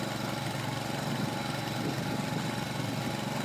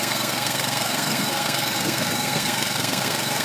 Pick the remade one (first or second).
second